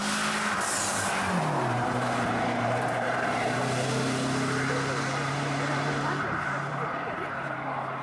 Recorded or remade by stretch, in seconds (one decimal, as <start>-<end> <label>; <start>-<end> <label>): 0.0-1.4 recorded; 1.4-8.0 remade

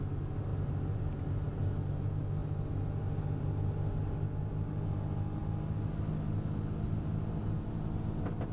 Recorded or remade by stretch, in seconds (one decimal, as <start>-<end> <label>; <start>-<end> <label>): 0.0-0.5 recorded; 0.5-1.2 remade; 1.2-8.5 recorded

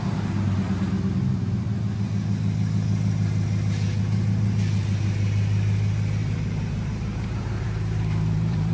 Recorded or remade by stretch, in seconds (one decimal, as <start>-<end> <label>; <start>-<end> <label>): 0.0-6.2 recorded; 6.2-8.7 remade